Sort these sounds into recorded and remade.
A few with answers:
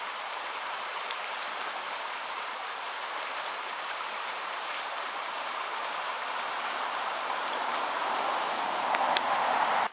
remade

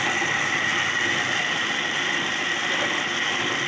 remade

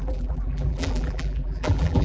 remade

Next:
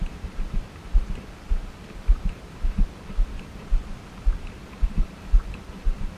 recorded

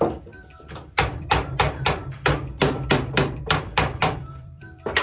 remade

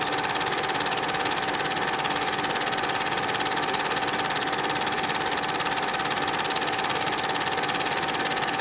recorded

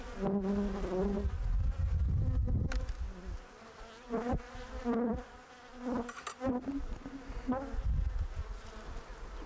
recorded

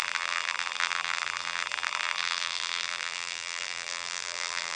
remade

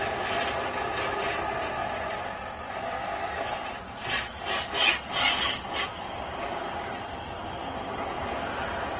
remade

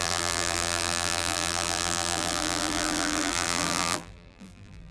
remade